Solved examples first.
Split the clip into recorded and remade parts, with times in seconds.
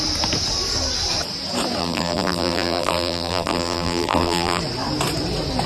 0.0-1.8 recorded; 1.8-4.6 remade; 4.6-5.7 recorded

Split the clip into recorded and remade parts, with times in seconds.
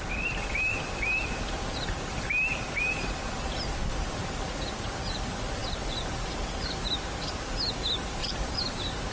0.0-8.2 recorded; 8.2-9.1 remade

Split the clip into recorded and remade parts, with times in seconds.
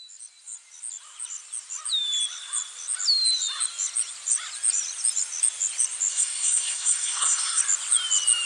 0.0-6.1 recorded; 6.1-7.6 remade; 7.6-8.5 recorded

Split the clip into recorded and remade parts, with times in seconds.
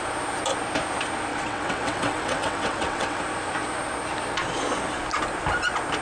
0.0-1.3 recorded; 1.3-3.2 remade; 3.2-6.0 recorded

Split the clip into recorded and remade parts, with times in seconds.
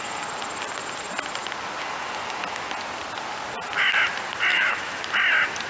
0.0-4.5 recorded; 4.5-5.0 remade; 5.0-5.7 recorded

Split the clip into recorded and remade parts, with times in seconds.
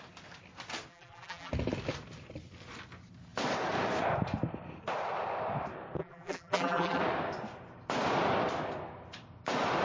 0.0-0.9 recorded; 0.9-1.5 remade; 1.5-6.0 recorded; 6.0-7.0 remade; 7.0-9.8 recorded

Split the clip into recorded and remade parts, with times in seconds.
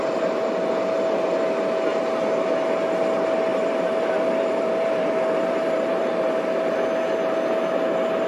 0.0-3.5 recorded; 3.5-6.5 remade; 6.5-8.3 recorded